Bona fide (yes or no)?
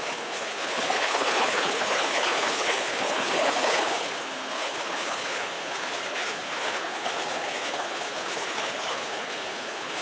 no